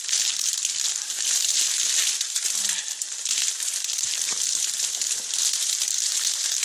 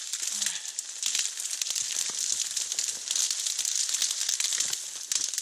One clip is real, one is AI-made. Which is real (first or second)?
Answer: second